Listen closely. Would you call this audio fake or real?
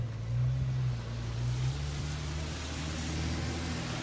real